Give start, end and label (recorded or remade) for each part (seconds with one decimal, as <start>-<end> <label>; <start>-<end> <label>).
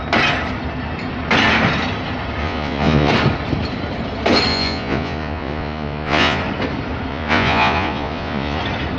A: 0.0-2.4 recorded; 2.4-3.1 remade; 3.1-4.5 recorded; 4.5-6.4 remade; 6.4-7.1 recorded; 7.1-8.6 remade; 8.6-9.0 recorded